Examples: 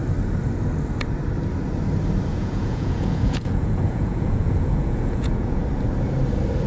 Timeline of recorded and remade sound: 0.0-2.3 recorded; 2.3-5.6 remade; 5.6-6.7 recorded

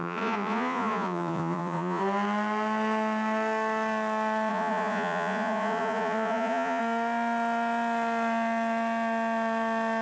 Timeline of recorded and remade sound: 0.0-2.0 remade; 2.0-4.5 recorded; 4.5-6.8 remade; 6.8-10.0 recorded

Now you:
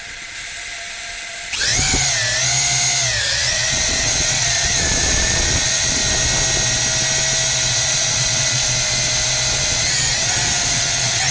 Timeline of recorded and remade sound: 0.0-1.7 remade; 1.7-3.2 recorded; 3.2-6.0 remade; 6.0-7.7 recorded; 7.7-8.6 remade; 8.6-9.6 recorded; 9.6-11.3 remade